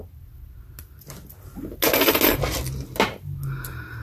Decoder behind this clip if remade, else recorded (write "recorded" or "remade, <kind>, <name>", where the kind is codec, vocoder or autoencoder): recorded